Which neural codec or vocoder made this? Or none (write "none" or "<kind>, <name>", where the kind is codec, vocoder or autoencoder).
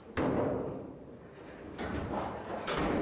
none